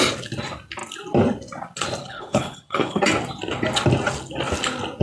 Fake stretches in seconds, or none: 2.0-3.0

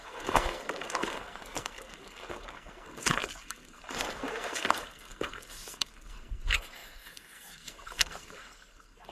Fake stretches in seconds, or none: 0.0-9.1

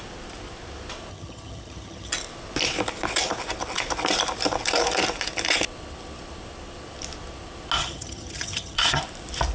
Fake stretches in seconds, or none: 1.1-2.1; 7.8-9.0

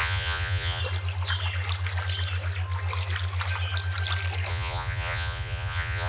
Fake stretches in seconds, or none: 0.0-0.8; 4.5-6.1

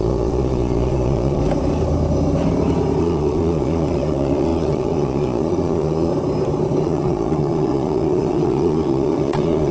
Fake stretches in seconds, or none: 0.0-1.4; 3.0-6.1; 6.8-9.7

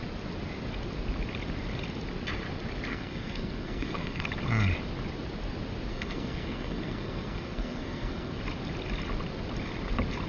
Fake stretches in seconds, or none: 2.9-4.3; 5.9-8.4

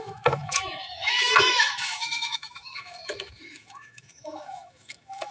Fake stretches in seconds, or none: 0.0-5.3